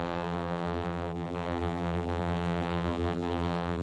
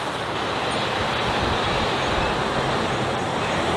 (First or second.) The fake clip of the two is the first